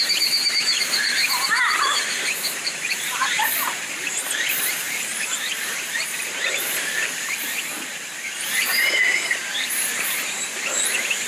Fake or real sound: fake